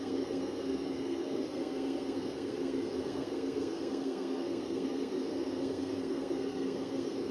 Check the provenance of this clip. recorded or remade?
remade